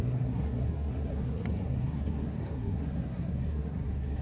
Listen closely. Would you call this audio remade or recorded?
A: remade